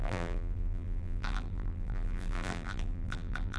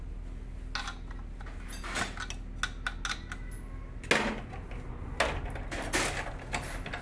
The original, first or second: second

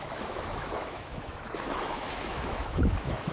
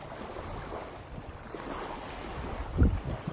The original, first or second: second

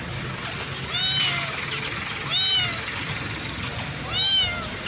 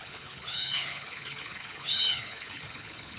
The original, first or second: first